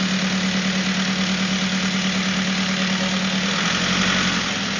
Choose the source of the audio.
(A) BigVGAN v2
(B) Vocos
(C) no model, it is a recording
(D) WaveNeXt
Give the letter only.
C